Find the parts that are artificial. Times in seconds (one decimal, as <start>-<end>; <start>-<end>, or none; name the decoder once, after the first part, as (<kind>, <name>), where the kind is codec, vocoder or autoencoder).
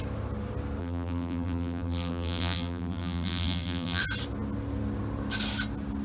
0.8-4.0 (vocoder, BigVGAN v2)